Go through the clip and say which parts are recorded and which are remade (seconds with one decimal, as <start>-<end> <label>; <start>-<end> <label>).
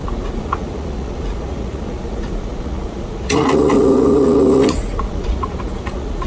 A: 0.0-6.3 remade